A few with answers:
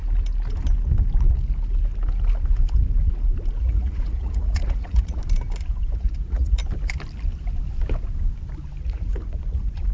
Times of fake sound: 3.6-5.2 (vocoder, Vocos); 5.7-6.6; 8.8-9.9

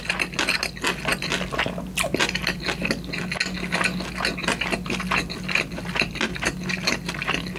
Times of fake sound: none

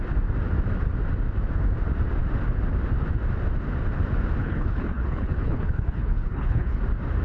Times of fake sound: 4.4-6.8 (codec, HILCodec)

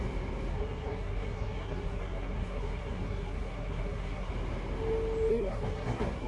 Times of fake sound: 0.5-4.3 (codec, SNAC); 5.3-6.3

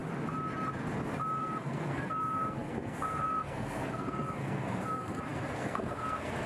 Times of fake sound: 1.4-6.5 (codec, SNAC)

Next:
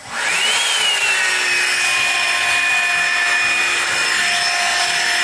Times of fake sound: none